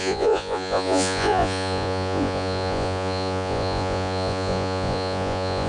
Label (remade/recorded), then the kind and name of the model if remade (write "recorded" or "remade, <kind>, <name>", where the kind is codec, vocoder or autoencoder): remade, vocoder, Vocos